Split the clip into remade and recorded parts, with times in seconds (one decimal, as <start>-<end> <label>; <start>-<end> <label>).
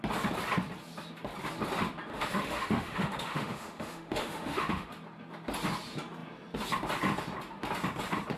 0.0-2.1 recorded; 2.1-4.9 remade; 4.9-8.4 recorded